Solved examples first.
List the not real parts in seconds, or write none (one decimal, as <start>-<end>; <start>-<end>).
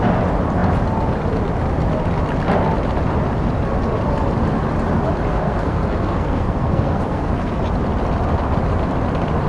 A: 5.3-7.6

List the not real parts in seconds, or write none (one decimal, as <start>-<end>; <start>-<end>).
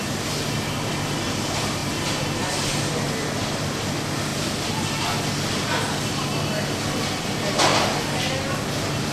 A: none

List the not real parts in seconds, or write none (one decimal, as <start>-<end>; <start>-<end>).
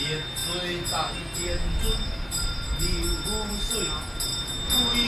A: none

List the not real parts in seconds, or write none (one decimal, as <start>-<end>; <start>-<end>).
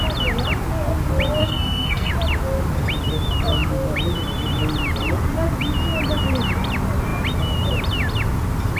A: 1.4-2.1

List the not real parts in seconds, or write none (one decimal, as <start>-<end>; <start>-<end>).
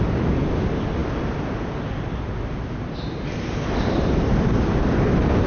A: none